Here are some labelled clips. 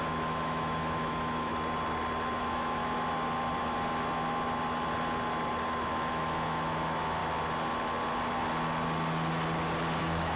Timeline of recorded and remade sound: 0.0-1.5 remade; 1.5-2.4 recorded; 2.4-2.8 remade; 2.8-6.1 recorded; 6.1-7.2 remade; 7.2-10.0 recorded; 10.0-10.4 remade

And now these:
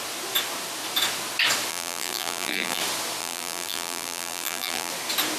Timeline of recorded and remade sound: 0.0-1.7 recorded; 1.7-2.8 remade; 2.8-3.2 recorded; 3.2-4.9 remade; 4.9-5.4 recorded

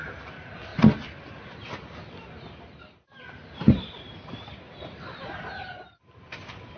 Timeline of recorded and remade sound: 0.0-6.8 recorded

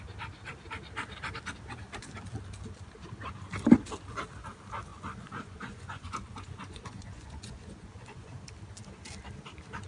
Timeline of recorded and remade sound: 0.0-4.9 recorded; 4.9-8.3 remade; 8.3-9.9 recorded